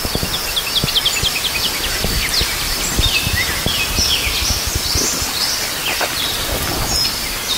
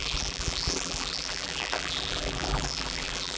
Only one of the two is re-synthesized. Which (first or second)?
second